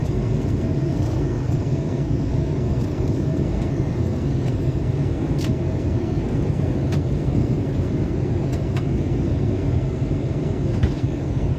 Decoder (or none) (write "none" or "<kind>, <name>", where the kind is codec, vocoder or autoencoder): codec, SNAC